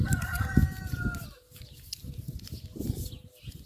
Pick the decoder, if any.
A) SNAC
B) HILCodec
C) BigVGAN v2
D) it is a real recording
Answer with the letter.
D